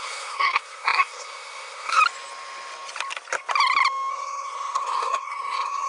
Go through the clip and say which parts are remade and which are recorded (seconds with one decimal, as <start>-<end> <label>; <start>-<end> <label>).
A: 0.0-2.0 remade; 2.0-4.1 recorded; 4.1-5.9 remade